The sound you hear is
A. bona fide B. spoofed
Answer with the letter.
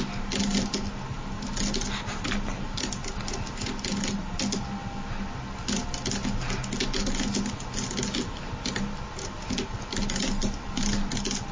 A